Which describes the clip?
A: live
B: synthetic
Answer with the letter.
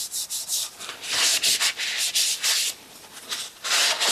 A